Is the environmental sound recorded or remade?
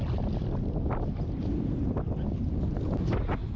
recorded